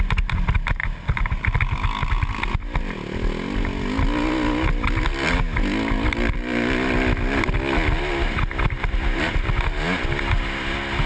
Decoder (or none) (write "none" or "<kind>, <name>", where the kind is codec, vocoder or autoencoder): none